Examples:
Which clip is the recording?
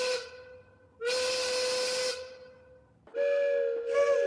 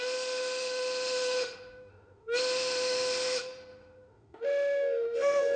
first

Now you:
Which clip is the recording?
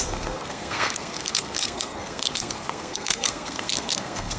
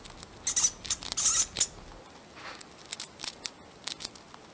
second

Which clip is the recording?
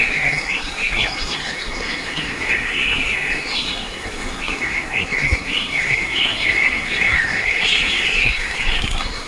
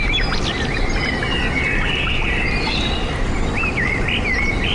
second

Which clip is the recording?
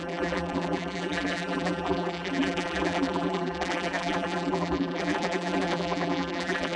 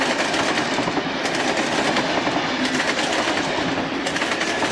second